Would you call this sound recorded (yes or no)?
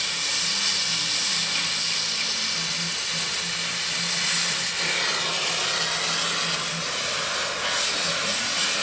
yes